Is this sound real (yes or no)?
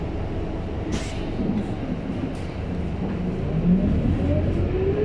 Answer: yes